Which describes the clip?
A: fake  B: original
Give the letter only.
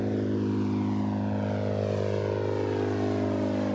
B